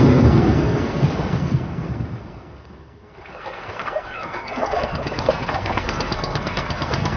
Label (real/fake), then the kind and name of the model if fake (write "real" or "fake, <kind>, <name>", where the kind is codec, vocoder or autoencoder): fake, codec, SNAC